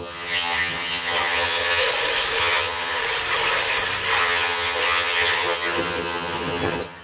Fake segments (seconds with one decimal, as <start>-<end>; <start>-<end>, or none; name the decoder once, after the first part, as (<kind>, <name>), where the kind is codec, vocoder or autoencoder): 0.0-1.8 (vocoder, HiFi-GAN); 2.4-3.0; 4.2-7.0

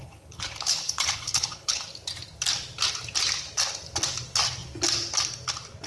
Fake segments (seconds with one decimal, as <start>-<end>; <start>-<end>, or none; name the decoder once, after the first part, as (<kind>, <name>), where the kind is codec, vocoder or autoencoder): 0.0-1.8 (codec, HILCodec)